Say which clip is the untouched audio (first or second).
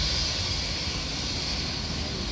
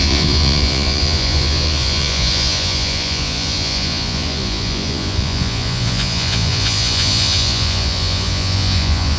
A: first